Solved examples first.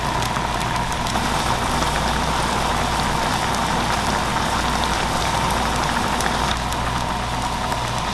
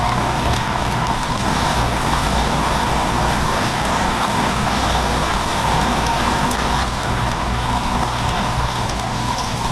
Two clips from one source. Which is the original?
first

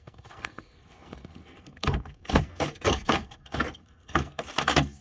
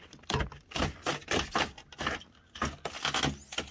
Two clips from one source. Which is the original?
second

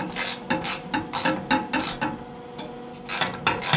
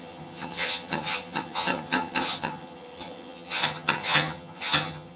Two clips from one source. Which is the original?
first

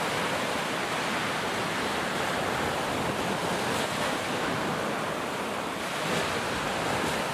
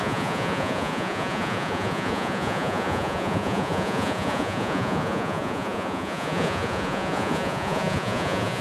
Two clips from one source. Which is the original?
first